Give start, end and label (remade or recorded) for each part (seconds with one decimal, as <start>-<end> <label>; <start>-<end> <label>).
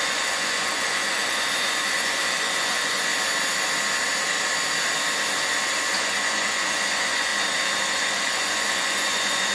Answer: 0.0-3.1 remade; 3.1-5.9 recorded; 5.9-7.3 remade; 7.3-7.9 recorded; 7.9-9.5 remade